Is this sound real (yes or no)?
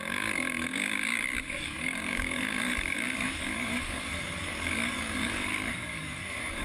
no